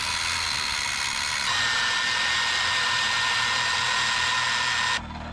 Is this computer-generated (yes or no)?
no